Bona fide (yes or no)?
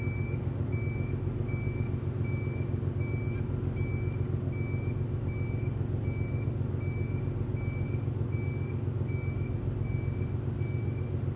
yes